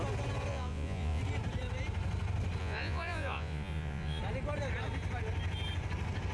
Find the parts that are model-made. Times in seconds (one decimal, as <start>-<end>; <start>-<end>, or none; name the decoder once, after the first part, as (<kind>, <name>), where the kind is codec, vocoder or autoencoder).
0.5-1.2 (vocoder, Vocos); 2.6-4.2